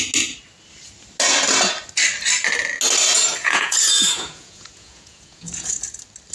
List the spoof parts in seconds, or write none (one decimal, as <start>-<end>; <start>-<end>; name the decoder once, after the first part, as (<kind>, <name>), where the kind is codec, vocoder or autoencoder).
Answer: 3.4-5.8 (vocoder, Vocos)